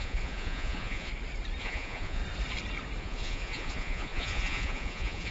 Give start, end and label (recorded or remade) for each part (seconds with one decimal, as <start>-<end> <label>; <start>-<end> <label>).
0.0-1.1 remade; 1.1-1.6 recorded; 1.6-2.2 remade; 2.2-3.0 recorded; 3.0-5.3 remade